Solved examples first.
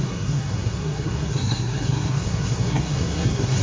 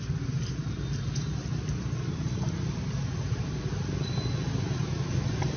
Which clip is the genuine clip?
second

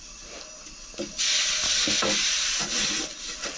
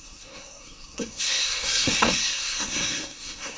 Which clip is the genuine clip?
first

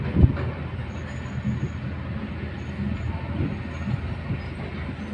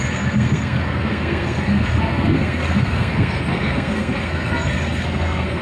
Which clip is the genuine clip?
first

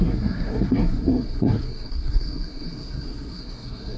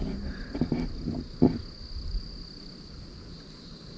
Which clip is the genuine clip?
second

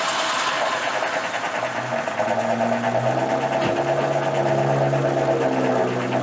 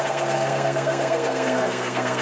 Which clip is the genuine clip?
first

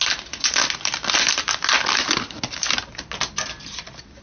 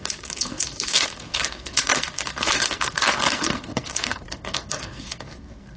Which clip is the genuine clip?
first